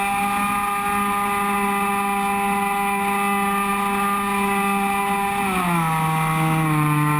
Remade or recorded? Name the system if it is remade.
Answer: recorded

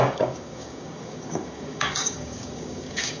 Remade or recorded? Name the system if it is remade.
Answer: remade, codec, DAC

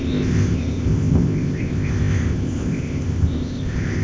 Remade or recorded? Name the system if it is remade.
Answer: remade, codec, ZipCodec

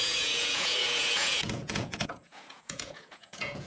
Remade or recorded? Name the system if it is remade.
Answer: remade, vocoder, Vocos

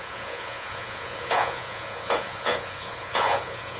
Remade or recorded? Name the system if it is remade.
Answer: remade, vocoder, Vocos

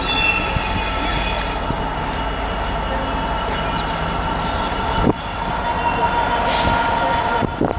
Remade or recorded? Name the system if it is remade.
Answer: recorded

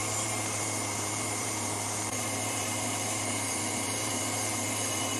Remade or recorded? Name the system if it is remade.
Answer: remade, vocoder, BigVGAN v2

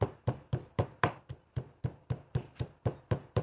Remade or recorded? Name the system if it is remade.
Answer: recorded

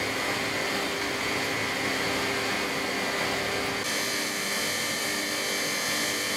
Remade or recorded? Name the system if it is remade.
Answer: recorded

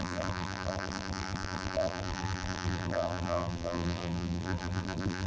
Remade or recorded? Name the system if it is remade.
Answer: remade, vocoder, BigVGAN v2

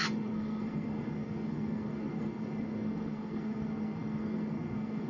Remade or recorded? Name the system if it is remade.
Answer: remade, codec, SNAC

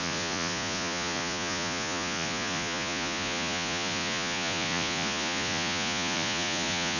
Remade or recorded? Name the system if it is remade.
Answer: remade, vocoder, Vocos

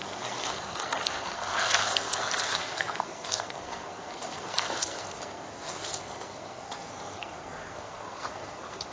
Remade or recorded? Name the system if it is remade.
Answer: remade, codec, SNAC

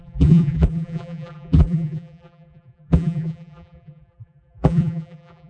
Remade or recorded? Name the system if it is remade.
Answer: remade, vocoder, BigVGAN v2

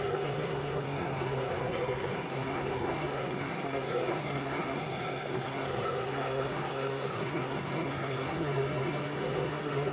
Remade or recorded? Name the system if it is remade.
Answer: remade, codec, SNAC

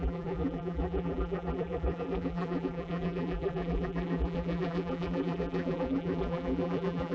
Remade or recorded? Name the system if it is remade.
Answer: remade, vocoder, BigVGAN v2